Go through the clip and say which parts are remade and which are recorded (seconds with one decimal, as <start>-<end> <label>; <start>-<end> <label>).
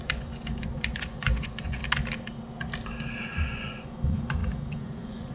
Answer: 0.0-1.8 remade; 1.8-3.2 recorded; 3.2-5.3 remade